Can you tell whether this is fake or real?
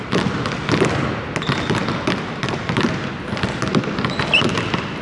real